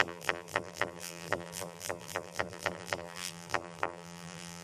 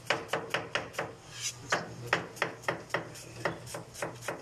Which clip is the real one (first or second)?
second